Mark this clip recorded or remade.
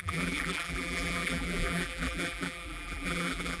remade